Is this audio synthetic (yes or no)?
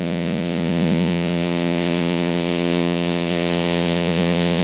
yes